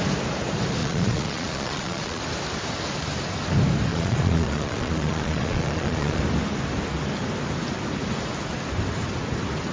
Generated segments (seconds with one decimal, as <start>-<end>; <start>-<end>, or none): 0.8-2.2; 3.9-6.2